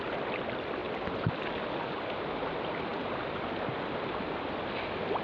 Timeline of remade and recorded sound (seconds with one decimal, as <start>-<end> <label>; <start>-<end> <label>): 0.0-5.2 recorded